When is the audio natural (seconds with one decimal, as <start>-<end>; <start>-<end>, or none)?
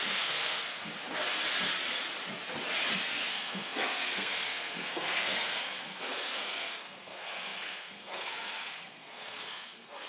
0.9-3.2